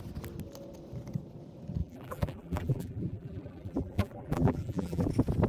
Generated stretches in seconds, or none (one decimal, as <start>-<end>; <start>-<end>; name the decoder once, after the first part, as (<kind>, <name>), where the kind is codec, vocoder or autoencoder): 1.8-5.1 (vocoder, BigVGAN v2)